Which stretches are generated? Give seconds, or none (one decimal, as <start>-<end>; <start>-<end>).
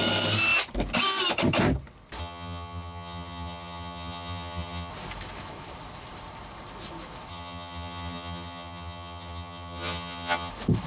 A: 2.2-4.9; 7.3-10.5